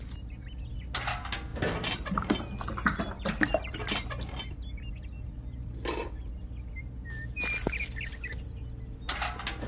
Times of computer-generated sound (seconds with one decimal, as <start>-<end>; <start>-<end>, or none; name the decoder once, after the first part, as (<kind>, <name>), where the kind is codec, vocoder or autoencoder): none